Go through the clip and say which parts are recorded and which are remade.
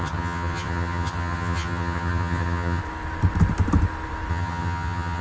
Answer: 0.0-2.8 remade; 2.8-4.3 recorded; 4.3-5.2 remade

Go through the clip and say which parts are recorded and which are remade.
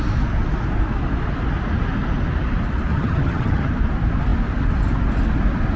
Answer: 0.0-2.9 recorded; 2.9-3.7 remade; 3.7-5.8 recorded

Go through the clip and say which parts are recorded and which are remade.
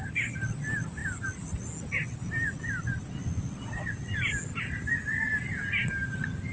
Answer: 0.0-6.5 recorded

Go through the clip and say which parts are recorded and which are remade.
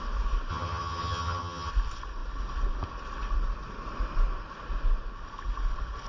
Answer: 0.0-0.5 recorded; 0.5-1.7 remade; 1.7-6.1 recorded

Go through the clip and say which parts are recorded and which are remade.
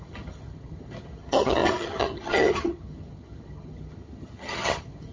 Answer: 0.0-5.1 remade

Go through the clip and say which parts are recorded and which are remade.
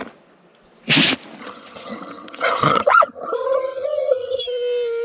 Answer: 0.0-1.4 recorded; 1.4-4.4 remade; 4.4-5.0 recorded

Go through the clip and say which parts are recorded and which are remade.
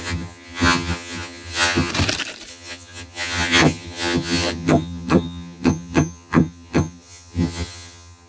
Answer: 0.0-1.9 remade; 1.9-2.5 recorded; 2.5-8.3 remade